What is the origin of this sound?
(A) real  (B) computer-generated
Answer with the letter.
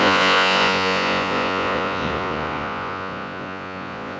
B